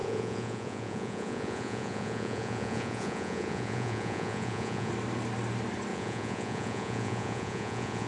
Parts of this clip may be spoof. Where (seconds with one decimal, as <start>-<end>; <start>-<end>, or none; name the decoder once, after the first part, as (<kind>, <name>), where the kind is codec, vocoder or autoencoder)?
0.0-4.9 (vocoder, Vocos); 5.9-8.1